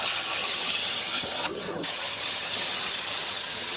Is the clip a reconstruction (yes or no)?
yes